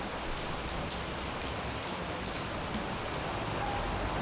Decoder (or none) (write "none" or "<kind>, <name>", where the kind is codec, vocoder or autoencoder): none